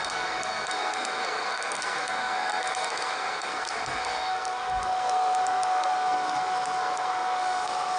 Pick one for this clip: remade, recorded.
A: remade